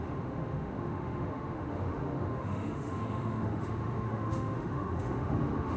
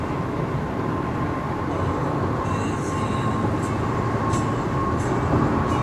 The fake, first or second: first